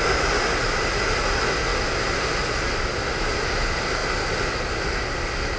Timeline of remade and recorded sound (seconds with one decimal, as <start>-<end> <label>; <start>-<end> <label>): 0.0-5.6 recorded